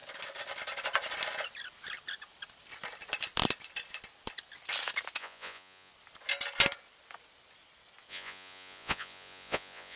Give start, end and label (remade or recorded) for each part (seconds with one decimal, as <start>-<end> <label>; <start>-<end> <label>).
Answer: 0.0-5.2 recorded; 5.2-5.9 remade; 5.9-8.1 recorded; 8.1-10.0 remade